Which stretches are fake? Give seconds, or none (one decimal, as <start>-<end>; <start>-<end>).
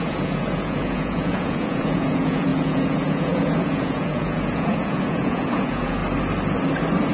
0.0-6.0